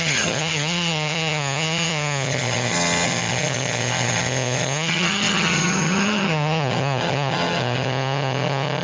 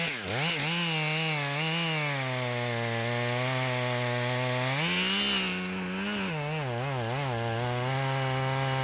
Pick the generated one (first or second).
first